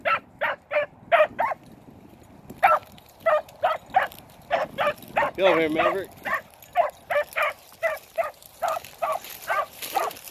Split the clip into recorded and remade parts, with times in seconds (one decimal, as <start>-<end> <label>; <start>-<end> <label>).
0.0-10.3 recorded